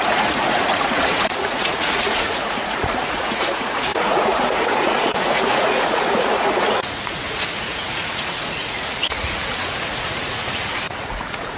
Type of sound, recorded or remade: remade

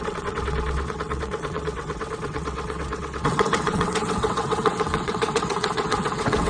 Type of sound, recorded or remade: remade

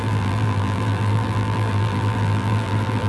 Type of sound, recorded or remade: remade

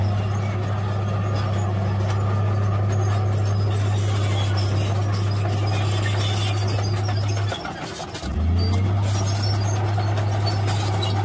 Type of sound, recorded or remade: recorded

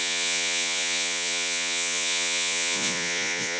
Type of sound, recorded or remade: remade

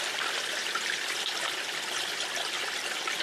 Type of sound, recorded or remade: recorded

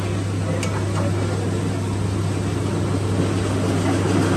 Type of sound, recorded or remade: recorded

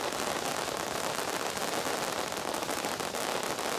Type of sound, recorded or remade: recorded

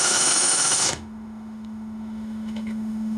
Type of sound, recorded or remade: remade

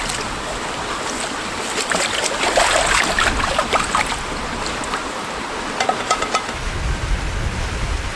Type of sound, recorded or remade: recorded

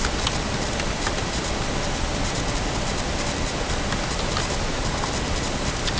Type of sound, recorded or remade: recorded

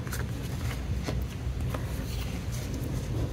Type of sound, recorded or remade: recorded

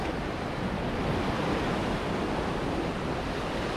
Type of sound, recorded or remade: recorded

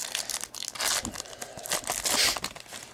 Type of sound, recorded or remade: recorded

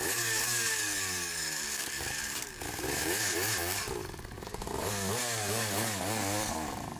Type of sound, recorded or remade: remade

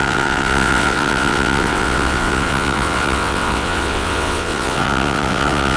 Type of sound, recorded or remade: remade